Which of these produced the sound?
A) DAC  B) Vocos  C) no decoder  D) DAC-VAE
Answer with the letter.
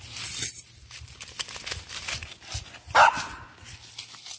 C